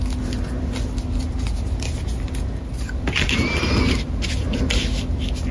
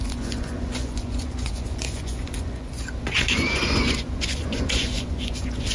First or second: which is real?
first